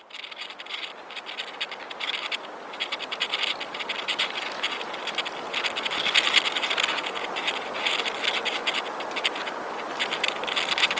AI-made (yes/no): no